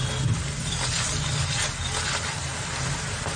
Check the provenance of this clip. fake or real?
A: real